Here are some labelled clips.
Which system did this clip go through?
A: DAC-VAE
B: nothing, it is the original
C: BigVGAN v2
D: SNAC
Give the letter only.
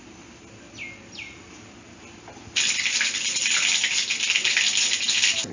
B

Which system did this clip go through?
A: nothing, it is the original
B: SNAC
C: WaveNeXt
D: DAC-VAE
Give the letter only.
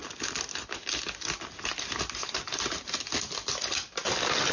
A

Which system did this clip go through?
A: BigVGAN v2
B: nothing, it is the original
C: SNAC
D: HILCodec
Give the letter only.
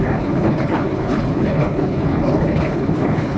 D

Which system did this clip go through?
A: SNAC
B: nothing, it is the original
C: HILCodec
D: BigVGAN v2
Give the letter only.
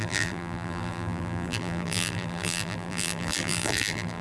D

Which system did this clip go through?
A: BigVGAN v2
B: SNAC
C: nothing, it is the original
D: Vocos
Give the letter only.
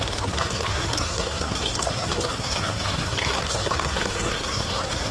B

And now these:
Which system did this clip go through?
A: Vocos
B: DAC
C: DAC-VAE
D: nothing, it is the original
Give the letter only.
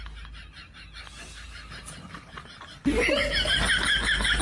D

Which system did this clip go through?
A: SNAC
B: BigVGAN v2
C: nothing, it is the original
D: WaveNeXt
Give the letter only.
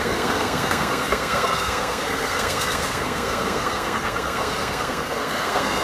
A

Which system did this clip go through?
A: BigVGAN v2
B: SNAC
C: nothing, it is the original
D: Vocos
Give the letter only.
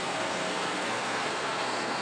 B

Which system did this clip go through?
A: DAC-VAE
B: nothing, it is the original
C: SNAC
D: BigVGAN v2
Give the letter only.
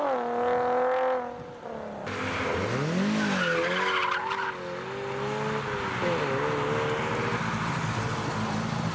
B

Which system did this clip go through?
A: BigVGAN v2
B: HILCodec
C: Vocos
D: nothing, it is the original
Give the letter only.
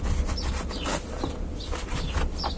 D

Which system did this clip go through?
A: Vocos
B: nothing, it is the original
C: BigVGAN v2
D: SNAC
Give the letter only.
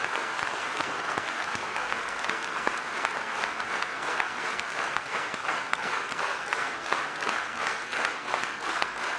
D